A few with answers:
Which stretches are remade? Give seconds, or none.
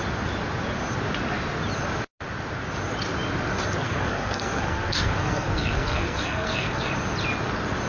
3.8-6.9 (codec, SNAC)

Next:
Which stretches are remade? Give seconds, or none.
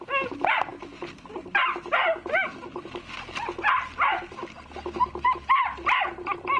none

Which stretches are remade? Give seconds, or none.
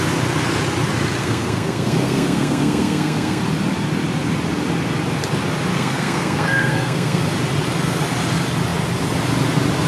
1.2-3.4 (codec, SNAC); 5.7-7.2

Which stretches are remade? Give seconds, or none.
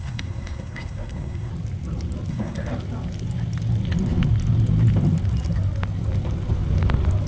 0.0-1.5 (codec, SNAC); 2.3-2.7